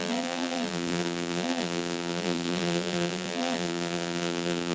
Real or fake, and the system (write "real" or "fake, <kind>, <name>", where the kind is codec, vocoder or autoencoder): fake, vocoder, BigVGAN v2